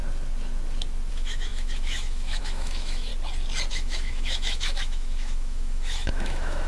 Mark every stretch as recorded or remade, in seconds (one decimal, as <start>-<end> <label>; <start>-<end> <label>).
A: 0.0-1.1 recorded; 1.1-3.1 remade; 3.1-3.7 recorded; 3.7-6.7 remade